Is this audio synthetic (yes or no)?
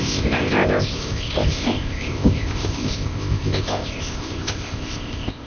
yes